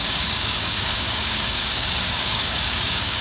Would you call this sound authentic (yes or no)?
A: no